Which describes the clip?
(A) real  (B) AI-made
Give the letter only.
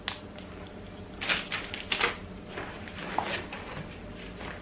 A